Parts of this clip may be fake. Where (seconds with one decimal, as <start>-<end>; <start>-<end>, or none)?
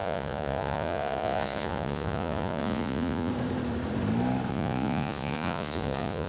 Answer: 0.0-3.3; 4.5-6.3